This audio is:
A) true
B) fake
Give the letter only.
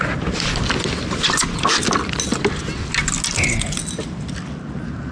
A